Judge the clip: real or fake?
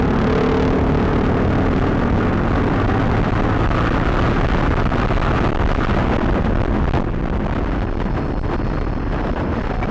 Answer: real